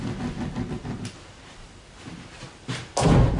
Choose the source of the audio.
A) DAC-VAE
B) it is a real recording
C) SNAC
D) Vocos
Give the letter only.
B